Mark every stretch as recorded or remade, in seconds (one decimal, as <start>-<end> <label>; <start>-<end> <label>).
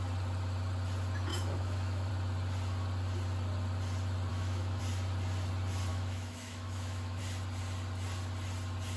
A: 0.0-1.3 recorded; 1.3-2.1 remade; 2.1-4.3 recorded; 4.3-4.8 remade; 4.8-5.9 recorded; 5.9-7.2 remade; 7.2-9.0 recorded